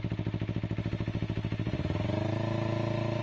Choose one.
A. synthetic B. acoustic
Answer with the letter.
B